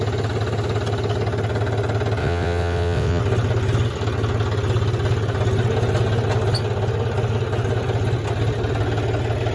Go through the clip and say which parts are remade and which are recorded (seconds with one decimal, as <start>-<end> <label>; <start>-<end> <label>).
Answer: 0.0-2.2 recorded; 2.2-3.2 remade; 3.2-9.5 recorded